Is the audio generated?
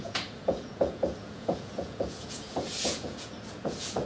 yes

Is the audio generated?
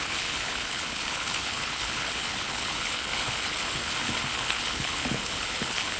yes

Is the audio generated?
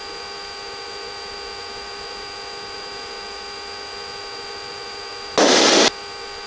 no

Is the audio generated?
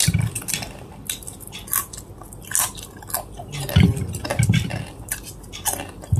no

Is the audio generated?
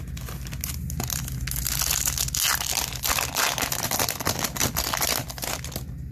no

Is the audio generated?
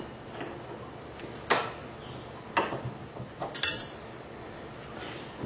no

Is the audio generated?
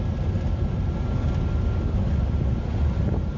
no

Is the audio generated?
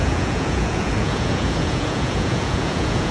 yes